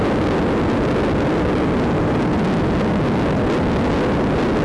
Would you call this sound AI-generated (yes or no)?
no